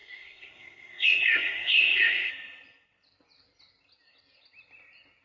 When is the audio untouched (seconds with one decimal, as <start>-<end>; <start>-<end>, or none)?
2.3-5.2